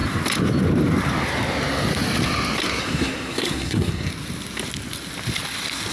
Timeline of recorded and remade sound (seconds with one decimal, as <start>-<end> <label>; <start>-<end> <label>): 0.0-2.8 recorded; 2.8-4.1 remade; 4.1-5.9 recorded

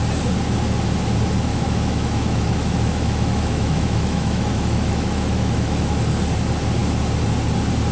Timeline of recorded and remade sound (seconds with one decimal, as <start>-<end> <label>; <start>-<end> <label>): 0.0-1.5 recorded; 1.5-6.0 remade; 6.0-7.9 recorded

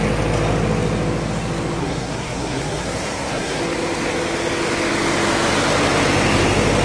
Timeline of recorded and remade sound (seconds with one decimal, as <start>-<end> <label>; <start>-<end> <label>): 0.0-1.8 recorded; 1.8-3.6 remade; 3.6-6.8 recorded

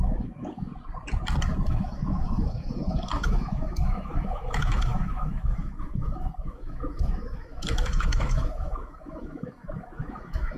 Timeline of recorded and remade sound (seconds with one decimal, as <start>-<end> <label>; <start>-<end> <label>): 0.0-0.7 remade; 0.7-1.7 recorded; 1.7-10.6 remade